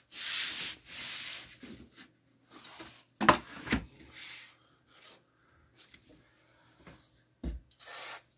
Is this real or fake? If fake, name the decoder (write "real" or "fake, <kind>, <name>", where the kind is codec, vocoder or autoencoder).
real